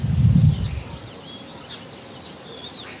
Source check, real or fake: real